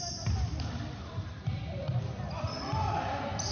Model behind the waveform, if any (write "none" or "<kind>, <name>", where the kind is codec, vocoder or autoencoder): vocoder, BigVGAN v2